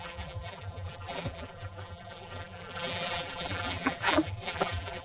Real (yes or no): no